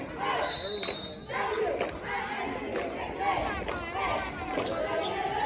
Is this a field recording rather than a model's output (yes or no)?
yes